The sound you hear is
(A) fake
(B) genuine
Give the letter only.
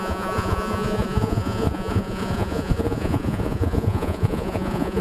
A